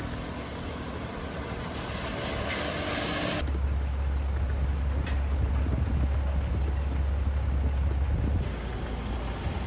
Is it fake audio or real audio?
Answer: real